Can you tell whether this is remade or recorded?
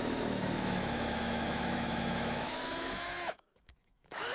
remade